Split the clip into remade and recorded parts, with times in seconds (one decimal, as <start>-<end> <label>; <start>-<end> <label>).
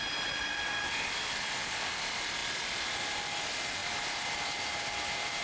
0.0-3.8 recorded; 3.8-5.4 remade